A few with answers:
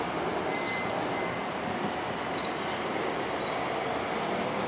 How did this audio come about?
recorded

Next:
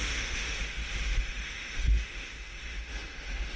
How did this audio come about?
remade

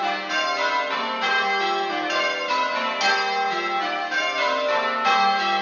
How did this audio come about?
recorded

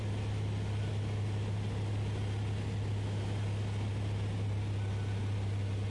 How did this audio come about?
recorded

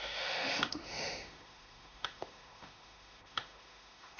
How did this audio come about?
remade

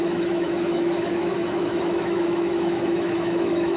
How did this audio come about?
remade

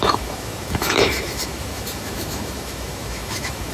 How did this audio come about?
remade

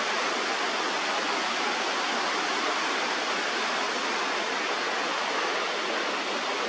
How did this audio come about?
recorded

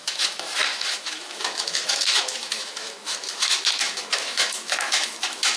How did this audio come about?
remade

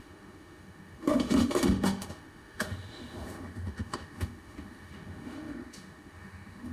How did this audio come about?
remade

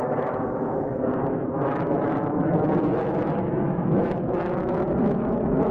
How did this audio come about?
remade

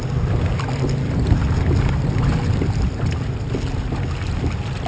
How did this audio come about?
recorded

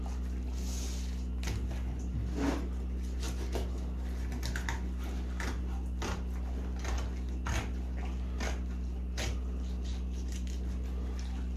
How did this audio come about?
recorded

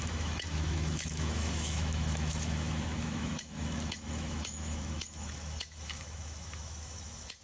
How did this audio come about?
remade